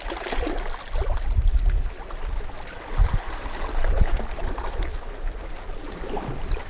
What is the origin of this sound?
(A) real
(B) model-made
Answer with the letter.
A